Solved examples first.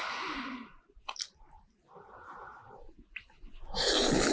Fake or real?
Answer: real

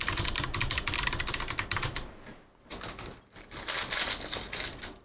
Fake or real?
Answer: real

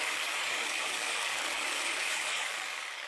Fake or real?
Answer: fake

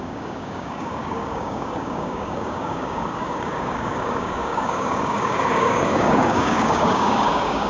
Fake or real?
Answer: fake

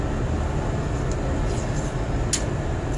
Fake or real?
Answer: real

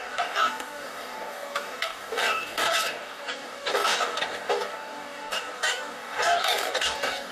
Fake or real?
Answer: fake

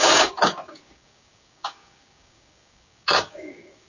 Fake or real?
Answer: fake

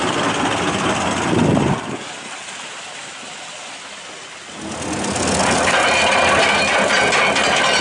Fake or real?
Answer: real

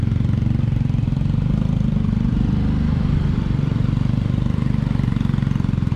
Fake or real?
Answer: real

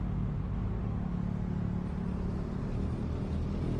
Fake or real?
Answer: real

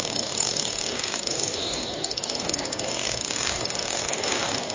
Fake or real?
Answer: fake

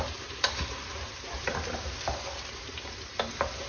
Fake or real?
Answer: real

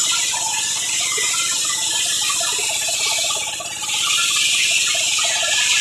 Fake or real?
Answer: real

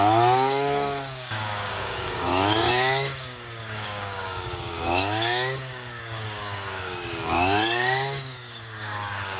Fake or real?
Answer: fake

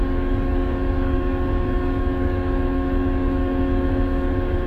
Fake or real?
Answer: fake